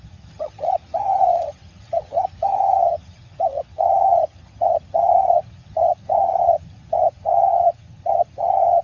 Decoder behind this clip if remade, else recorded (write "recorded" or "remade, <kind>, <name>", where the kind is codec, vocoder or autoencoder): remade, vocoder, HiFi-GAN